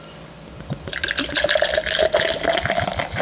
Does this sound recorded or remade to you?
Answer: recorded